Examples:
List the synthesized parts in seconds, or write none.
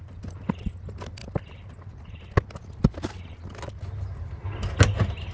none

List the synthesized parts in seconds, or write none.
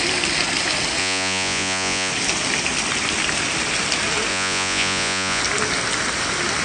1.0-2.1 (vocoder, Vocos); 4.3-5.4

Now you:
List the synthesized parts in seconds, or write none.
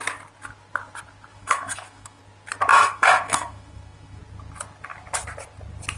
1.3-2.2 (autoencoder, DAC-VAE); 2.7-4.2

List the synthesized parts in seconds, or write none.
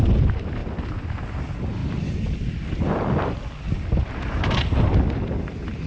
none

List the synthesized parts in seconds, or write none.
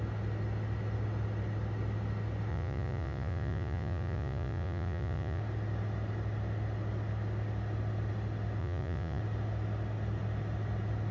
2.5-5.4 (vocoder, Vocos); 8.6-9.2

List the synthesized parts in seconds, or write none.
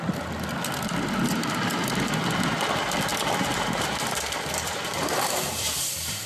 1.2-1.9 (vocoder, BigVGAN v2); 3.1-6.3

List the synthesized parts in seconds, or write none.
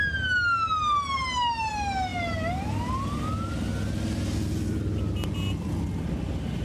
none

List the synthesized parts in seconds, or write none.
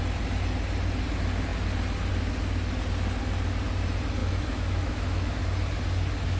4.2-5.4 (autoencoder, DAC-VAE)